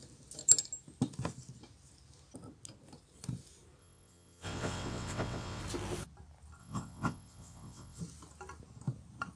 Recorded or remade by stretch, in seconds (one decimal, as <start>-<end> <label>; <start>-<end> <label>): 0.0-3.8 recorded; 3.8-5.6 remade; 5.6-6.6 recorded; 6.6-8.0 remade; 8.0-9.4 recorded